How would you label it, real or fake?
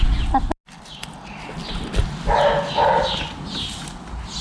real